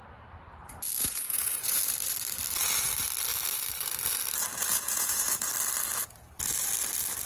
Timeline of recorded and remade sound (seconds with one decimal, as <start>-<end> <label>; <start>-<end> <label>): 0.0-1.0 recorded; 1.0-1.8 remade; 1.8-4.7 recorded; 4.7-5.5 remade; 5.5-7.3 recorded